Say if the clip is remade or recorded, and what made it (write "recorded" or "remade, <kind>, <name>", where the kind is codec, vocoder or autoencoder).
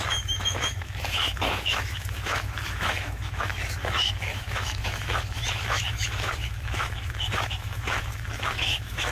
remade, autoencoder, DAC-VAE